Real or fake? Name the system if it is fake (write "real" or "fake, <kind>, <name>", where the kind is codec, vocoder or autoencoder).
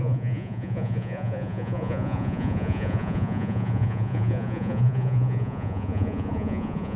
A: fake, vocoder, Vocos